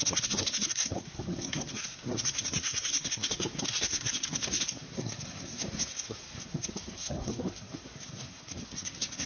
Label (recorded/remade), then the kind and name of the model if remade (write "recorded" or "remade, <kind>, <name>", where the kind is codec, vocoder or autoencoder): remade, codec, SNAC